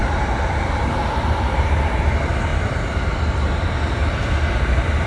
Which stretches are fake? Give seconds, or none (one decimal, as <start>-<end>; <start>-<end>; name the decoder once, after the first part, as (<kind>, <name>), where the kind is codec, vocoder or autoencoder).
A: 0.0-2.5 (vocoder, BigVGAN v2); 4.5-5.1